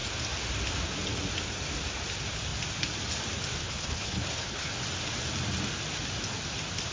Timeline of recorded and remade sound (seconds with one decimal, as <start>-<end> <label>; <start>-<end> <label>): 0.0-3.6 recorded; 3.6-4.7 remade; 4.7-6.9 recorded